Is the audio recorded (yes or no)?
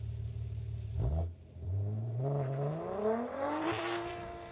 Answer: no